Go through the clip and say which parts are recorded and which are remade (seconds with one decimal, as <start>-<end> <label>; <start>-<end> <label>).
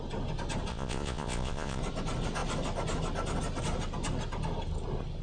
0.0-0.7 recorded; 0.7-1.8 remade; 1.8-5.2 recorded